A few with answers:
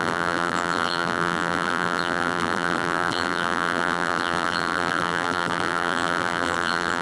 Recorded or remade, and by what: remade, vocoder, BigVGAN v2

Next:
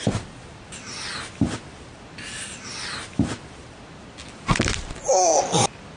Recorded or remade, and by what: recorded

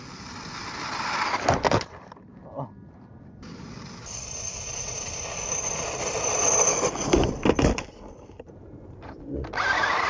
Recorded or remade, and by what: recorded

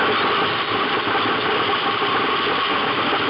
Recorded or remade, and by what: remade, vocoder, BigVGAN v2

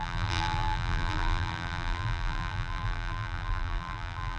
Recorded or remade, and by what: remade, vocoder, BigVGAN v2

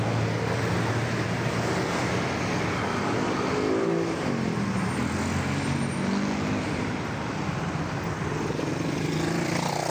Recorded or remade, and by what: recorded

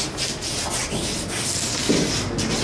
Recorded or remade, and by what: recorded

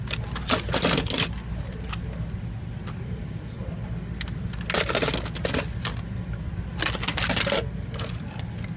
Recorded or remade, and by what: recorded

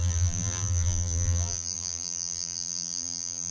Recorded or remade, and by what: remade, vocoder, BigVGAN v2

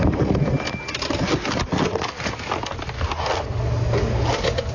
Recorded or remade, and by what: recorded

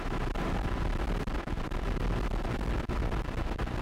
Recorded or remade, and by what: recorded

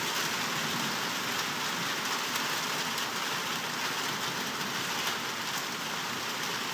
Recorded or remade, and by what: recorded